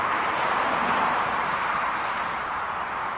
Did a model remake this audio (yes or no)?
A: yes